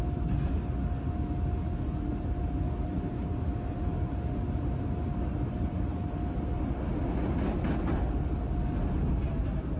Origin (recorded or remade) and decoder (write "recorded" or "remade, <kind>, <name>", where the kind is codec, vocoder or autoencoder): recorded